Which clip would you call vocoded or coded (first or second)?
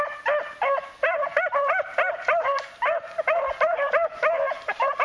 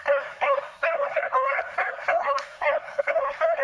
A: second